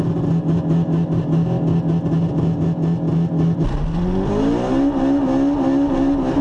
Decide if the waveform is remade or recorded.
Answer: recorded